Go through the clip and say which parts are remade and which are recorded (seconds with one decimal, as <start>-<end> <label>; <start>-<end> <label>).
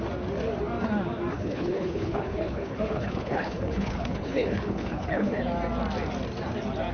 0.0-1.3 recorded; 1.3-5.4 remade; 5.4-6.9 recorded